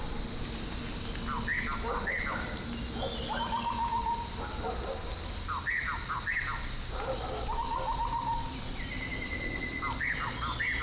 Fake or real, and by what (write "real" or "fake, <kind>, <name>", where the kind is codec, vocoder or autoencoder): real